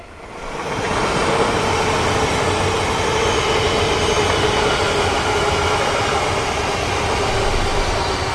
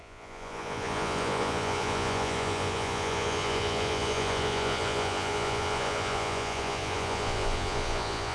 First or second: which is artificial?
second